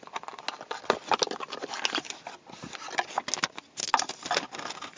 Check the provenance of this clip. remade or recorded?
recorded